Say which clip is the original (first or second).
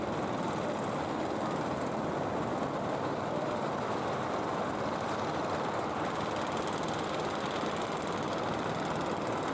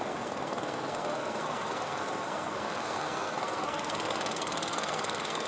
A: first